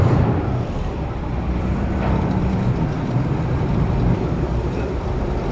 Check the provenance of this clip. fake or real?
fake